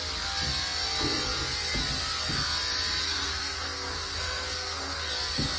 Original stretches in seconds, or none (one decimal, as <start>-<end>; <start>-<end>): 0.0-3.0; 5.1-5.6